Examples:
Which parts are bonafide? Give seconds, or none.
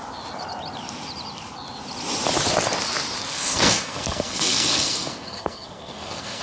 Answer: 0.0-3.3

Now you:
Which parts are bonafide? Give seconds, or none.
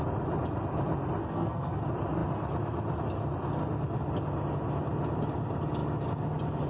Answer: 0.0-1.2; 1.8-6.7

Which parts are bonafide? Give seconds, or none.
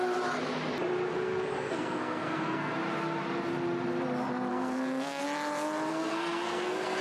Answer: 0.0-1.1; 2.7-4.5; 5.2-5.9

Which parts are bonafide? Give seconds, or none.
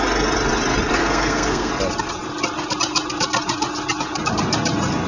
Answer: 0.0-1.0; 1.7-5.1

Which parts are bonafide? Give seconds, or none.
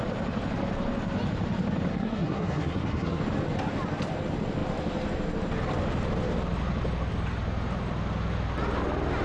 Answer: 0.0-1.9; 3.2-9.2